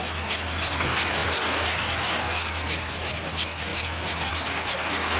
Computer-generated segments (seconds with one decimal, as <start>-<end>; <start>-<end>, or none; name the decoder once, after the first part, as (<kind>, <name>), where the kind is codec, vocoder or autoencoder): 0.0-5.2 (codec, DAC)